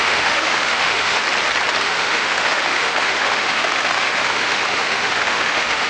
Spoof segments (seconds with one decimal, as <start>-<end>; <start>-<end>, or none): 0.0-1.2; 1.8-5.9